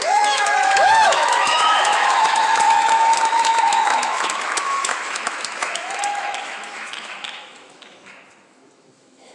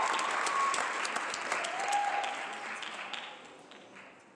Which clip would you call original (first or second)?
second